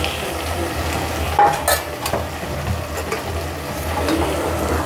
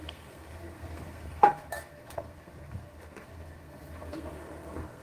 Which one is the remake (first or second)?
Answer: second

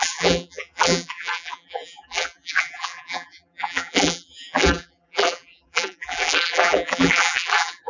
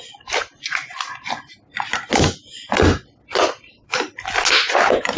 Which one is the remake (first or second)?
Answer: first